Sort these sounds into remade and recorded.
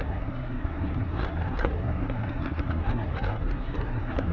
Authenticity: remade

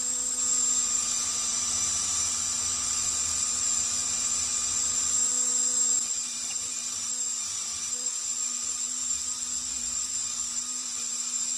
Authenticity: remade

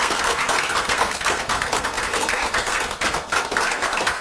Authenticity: remade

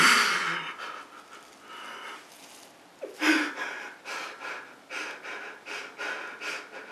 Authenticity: recorded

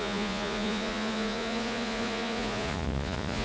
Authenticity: remade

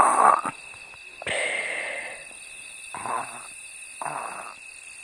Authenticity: recorded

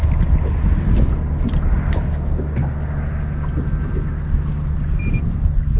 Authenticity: recorded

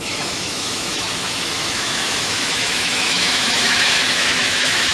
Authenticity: remade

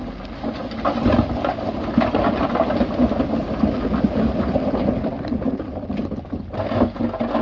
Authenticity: recorded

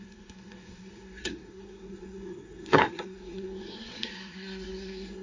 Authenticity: remade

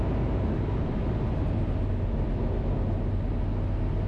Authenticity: recorded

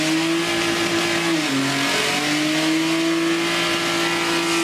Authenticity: recorded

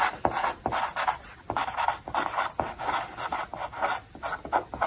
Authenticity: recorded